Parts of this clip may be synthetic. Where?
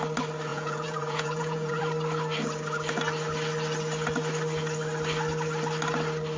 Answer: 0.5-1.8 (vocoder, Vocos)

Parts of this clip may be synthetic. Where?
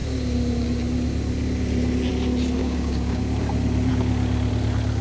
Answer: 2.6-3.2 (codec, DAC)